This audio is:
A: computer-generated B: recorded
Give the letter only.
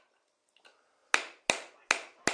B